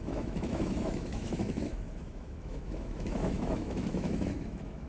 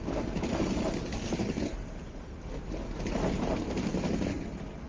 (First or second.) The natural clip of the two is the second